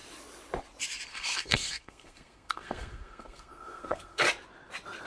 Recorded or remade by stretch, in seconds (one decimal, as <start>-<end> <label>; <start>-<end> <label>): 0.0-1.1 recorded; 1.1-4.2 remade; 4.2-5.1 recorded